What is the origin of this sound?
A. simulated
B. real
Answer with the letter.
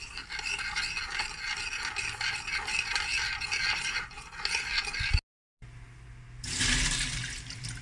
B